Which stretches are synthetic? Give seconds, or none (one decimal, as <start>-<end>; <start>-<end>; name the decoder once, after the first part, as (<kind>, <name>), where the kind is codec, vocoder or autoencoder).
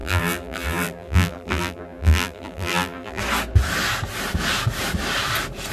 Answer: 0.0-3.2 (vocoder, BigVGAN v2)